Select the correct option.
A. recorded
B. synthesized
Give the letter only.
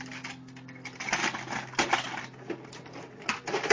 A